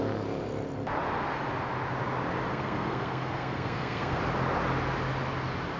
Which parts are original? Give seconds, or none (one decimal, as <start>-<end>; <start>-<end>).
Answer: 0.0-2.5; 4.2-5.8